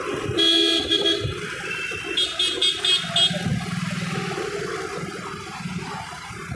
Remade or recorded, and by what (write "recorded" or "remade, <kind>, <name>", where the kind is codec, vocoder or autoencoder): recorded